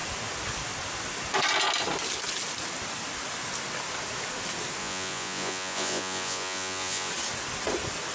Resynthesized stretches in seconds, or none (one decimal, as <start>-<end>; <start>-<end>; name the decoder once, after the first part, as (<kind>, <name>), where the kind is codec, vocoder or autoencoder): 4.8-7.1 (vocoder, Vocos)